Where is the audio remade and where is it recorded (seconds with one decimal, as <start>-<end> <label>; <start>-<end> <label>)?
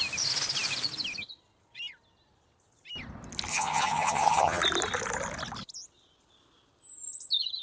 0.0-3.5 recorded; 3.5-4.6 remade; 4.6-7.6 recorded